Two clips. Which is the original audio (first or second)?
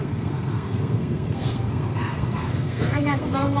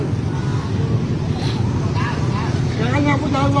second